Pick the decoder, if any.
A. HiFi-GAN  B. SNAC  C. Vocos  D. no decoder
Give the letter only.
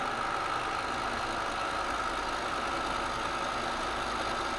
D